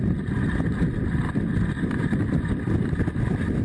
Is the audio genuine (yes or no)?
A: yes